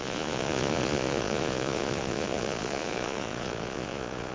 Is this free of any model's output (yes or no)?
no